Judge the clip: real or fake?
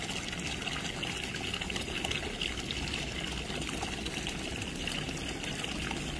real